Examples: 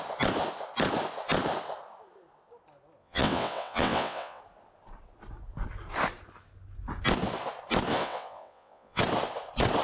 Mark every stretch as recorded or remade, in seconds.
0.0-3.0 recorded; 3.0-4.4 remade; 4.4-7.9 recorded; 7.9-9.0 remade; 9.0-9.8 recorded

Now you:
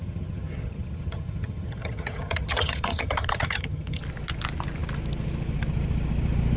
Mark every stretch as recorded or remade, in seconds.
0.0-4.0 remade; 4.0-6.6 recorded